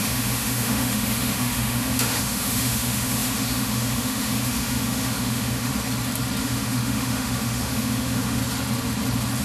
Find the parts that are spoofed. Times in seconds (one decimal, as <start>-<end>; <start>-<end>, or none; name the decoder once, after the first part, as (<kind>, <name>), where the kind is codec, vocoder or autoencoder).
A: 0.0-5.7 (autoencoder, DAC-VAE); 6.4-8.4